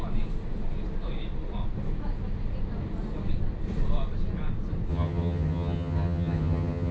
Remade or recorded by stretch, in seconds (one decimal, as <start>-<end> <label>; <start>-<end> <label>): 0.0-4.9 recorded; 4.9-6.9 remade